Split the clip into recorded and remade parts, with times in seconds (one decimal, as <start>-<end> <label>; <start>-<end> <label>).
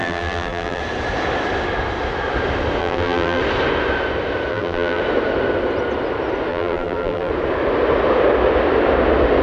0.0-0.8 remade; 0.8-2.8 recorded; 2.8-3.4 remade; 3.4-4.5 recorded; 4.5-5.0 remade; 5.0-6.5 recorded; 6.5-7.3 remade; 7.3-9.4 recorded